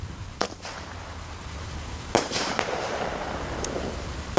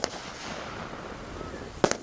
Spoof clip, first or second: first